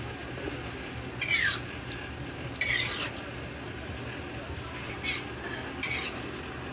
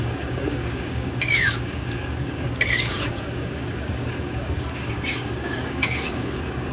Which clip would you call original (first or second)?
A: first